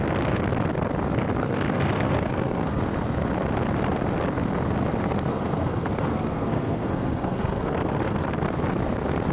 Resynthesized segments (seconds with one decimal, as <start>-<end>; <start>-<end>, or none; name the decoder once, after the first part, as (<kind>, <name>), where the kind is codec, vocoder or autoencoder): 1.4-2.8 (codec, SNAC); 5.3-8.3